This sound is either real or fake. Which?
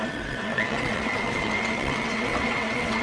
fake